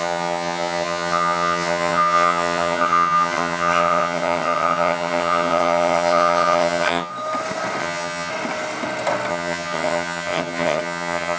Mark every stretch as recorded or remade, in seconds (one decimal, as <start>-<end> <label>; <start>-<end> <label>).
0.0-7.1 remade; 7.1-7.8 recorded; 7.8-8.3 remade; 8.3-9.3 recorded; 9.3-11.4 remade